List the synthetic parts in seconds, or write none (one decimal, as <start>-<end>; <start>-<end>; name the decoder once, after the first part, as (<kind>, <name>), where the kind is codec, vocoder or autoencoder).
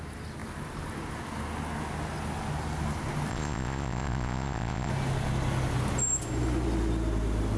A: 3.3-4.9 (vocoder, Vocos)